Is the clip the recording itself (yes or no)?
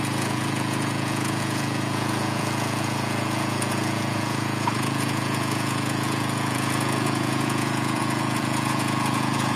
no